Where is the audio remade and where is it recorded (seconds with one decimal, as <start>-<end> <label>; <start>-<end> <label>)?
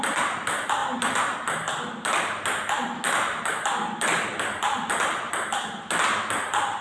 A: 0.0-6.8 recorded